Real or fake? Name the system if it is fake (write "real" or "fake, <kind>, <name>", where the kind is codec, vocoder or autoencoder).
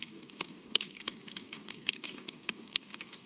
fake, codec, DAC